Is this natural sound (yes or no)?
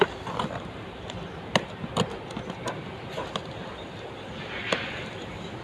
yes